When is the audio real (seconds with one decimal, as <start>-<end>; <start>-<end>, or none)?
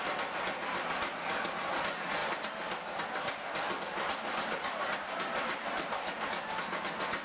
0.0-7.2